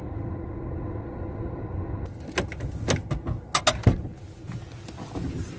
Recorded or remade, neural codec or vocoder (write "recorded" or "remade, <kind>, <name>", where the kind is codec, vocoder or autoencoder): recorded